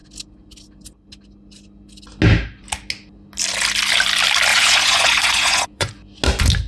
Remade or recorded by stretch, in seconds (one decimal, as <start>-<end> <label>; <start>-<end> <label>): 0.0-4.5 recorded; 4.5-5.9 remade; 5.9-6.7 recorded